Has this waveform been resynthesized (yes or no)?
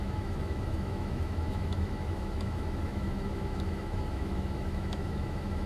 yes